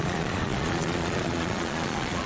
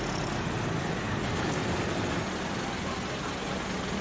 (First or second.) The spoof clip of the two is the first